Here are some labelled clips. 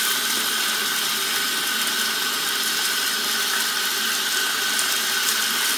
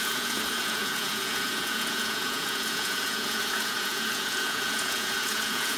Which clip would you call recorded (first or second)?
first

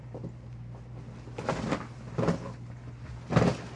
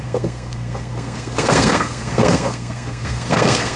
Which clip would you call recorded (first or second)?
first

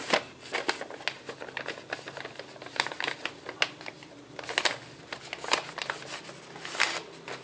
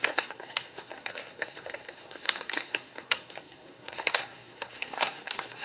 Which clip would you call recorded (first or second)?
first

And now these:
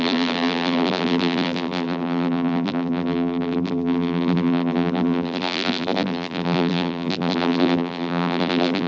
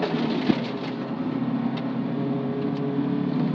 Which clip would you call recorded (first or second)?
second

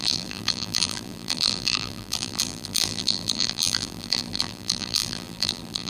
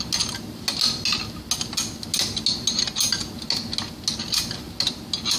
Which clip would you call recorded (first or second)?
second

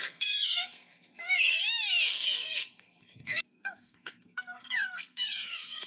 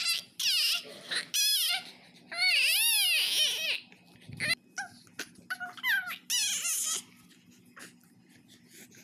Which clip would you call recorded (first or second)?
second